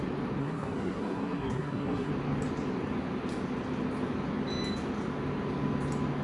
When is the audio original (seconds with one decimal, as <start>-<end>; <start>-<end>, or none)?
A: 0.0-0.4; 2.1-6.2